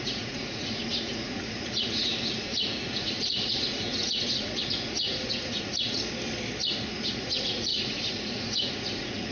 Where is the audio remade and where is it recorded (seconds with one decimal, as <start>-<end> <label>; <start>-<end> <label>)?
0.0-6.0 remade; 6.0-6.6 recorded; 6.6-9.3 remade